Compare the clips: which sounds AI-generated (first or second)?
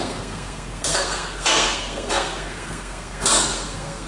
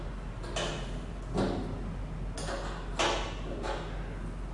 first